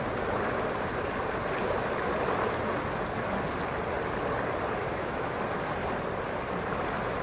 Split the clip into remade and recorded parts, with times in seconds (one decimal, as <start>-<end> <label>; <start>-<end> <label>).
0.0-4.8 recorded; 4.8-5.4 remade; 5.4-7.2 recorded